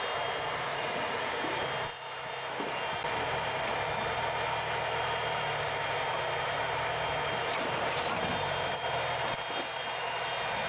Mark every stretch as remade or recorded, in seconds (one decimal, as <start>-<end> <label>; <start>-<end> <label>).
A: 0.0-0.7 recorded; 0.7-1.3 remade; 1.3-10.7 recorded

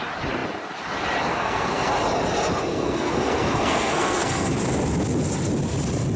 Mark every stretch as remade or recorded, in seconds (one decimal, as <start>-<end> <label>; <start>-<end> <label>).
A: 0.0-1.3 recorded; 1.3-1.9 remade; 1.9-2.7 recorded; 2.7-4.5 remade; 4.5-6.2 recorded

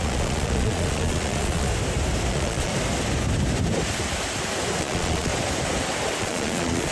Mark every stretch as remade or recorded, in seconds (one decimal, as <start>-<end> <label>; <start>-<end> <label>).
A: 0.0-1.7 remade; 1.7-2.3 recorded; 2.3-2.7 remade; 2.7-4.8 recorded; 4.8-5.3 remade; 5.3-6.2 recorded; 6.2-6.9 remade

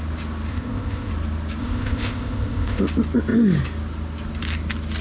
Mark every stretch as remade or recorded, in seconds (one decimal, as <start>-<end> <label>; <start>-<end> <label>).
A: 0.0-0.5 recorded; 0.5-1.1 remade; 1.1-1.6 recorded; 1.6-2.8 remade; 2.8-5.0 recorded